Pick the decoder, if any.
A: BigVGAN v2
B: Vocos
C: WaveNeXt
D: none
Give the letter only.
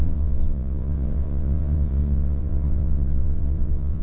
C